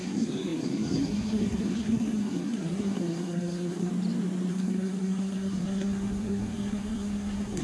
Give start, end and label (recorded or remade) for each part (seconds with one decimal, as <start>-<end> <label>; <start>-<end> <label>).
0.0-3.9 remade; 3.9-4.5 recorded; 4.5-7.6 remade

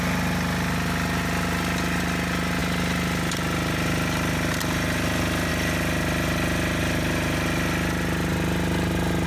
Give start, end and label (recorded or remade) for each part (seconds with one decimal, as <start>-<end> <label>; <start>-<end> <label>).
0.0-9.3 recorded

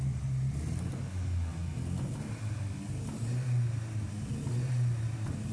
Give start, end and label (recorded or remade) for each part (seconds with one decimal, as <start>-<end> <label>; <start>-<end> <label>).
0.0-5.5 recorded

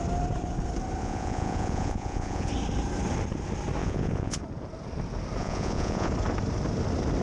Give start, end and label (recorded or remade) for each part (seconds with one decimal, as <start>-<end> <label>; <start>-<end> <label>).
0.0-1.0 recorded; 1.0-2.5 remade; 2.5-3.8 recorded; 3.8-4.4 remade; 4.4-5.4 recorded; 5.4-6.1 remade; 6.1-7.2 recorded

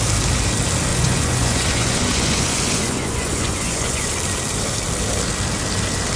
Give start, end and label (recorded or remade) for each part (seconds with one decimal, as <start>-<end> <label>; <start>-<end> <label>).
0.0-0.9 recorded; 0.9-4.1 remade; 4.1-6.2 recorded

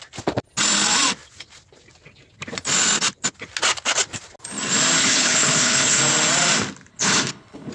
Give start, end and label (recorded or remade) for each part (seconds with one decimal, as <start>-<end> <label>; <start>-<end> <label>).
0.0-5.0 recorded; 5.0-6.0 remade; 6.0-6.9 recorded; 6.9-7.7 remade

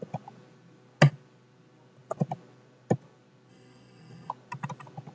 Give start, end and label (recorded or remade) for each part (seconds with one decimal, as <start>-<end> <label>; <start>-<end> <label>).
0.0-3.5 recorded; 3.5-4.3 remade; 4.3-5.1 recorded